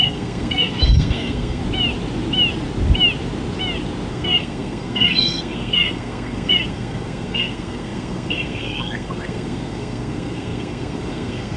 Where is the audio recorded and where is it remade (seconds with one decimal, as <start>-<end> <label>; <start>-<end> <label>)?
0.0-1.6 remade; 1.6-4.1 recorded; 4.1-11.6 remade